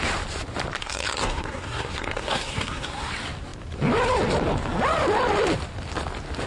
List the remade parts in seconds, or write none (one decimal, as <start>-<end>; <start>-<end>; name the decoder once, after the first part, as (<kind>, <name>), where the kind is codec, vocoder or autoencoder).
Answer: 0.8-3.1 (codec, SNAC)